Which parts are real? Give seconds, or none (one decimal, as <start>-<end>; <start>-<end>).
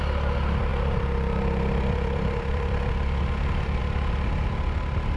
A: 0.0-0.7; 3.8-5.2